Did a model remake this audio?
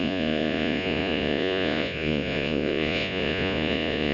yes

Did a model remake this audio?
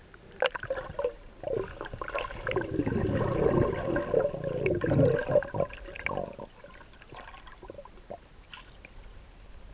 no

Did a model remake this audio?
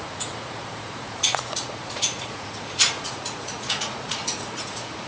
yes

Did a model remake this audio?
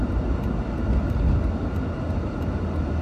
no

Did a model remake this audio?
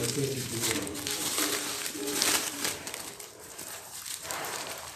yes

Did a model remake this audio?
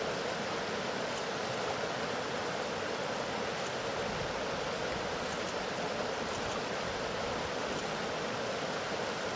no